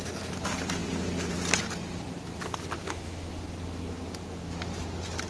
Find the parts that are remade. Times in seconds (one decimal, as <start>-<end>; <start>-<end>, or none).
2.8-3.3